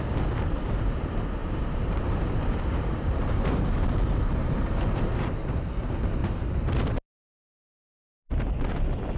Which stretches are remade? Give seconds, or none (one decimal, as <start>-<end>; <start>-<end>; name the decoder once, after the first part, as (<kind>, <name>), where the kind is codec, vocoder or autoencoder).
1.4-5.7 (vocoder, BigVGAN v2); 6.2-7.8